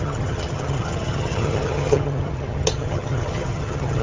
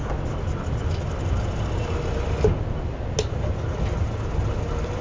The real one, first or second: second